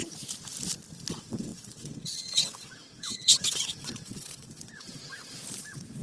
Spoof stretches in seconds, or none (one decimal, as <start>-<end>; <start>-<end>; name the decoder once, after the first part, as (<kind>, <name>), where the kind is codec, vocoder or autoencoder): 1.1-5.0 (vocoder, WaveNeXt); 5.6-6.0